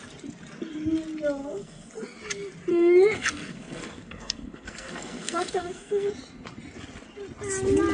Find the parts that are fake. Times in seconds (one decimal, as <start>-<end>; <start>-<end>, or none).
1.4-1.9; 2.7-6.1